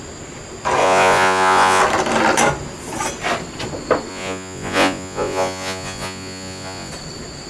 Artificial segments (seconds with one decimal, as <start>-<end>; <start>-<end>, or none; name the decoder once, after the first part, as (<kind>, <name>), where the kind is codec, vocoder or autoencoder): 0.8-1.8 (vocoder, Vocos); 4.1-6.9